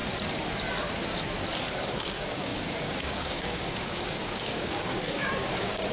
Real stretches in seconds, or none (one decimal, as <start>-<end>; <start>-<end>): 0.0-2.0